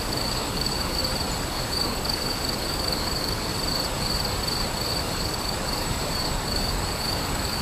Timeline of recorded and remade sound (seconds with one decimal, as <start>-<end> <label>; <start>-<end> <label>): 0.0-1.0 remade; 1.0-1.5 recorded; 1.5-3.5 remade; 3.5-5.0 recorded; 5.0-7.6 remade